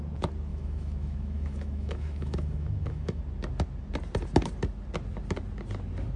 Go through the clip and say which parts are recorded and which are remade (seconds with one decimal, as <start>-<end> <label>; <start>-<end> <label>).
0.0-0.5 recorded; 0.5-3.2 remade; 3.2-6.2 recorded